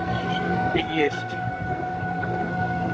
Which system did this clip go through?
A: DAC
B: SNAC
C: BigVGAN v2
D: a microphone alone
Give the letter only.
B